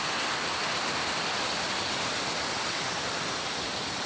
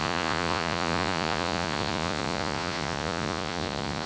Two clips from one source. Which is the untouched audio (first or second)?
first